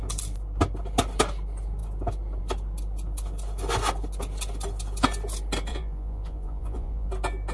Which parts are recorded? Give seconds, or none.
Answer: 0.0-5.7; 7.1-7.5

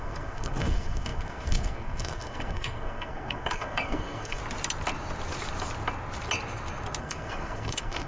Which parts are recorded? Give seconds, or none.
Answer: 4.4-7.0

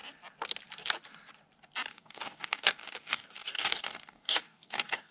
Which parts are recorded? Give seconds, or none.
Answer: 0.0-1.9